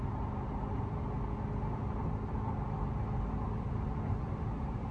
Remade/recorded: recorded